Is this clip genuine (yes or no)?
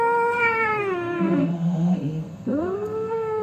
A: no